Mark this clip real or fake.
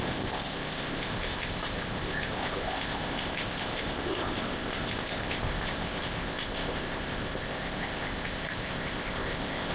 fake